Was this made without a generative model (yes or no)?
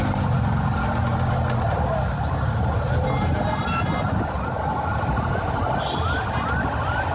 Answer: yes